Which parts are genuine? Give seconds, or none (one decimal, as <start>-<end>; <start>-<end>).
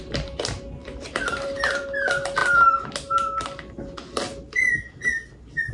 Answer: 0.0-0.8; 1.8-5.7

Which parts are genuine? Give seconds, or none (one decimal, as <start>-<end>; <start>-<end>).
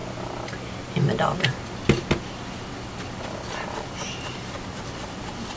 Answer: 0.0-3.1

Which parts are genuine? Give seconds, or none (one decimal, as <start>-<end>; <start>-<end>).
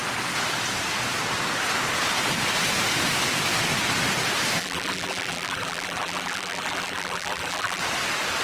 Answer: 0.0-4.6; 7.8-8.4